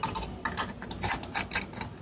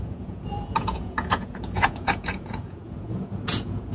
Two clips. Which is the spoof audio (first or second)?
second